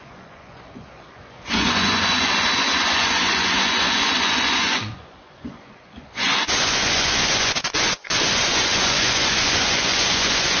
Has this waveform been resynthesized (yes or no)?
yes